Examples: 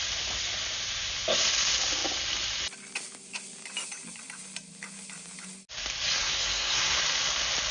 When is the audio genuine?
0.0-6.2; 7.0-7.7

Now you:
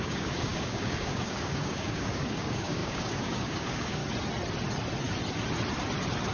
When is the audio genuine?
4.0-6.3

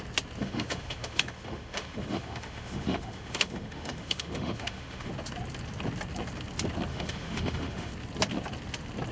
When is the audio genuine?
0.0-0.4; 5.1-6.9; 7.9-9.1

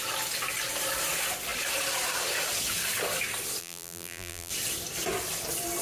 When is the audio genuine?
0.0-3.6; 4.5-5.8

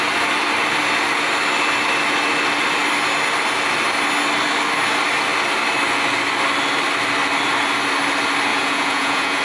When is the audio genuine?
0.0-8.5

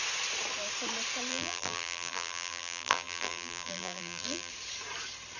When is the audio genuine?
0.0-1.3; 4.5-5.4

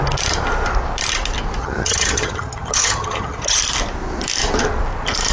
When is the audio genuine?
0.0-1.6; 3.6-5.3

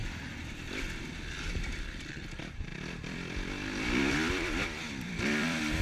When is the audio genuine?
none